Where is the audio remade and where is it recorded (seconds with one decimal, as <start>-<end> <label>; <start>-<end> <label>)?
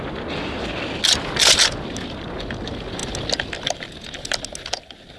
0.0-5.2 recorded